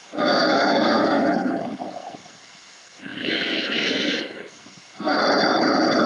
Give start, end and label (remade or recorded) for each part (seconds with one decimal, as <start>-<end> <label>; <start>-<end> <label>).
0.0-5.2 remade; 5.2-6.1 recorded